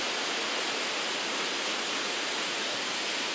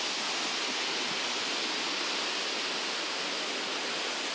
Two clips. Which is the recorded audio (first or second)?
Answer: second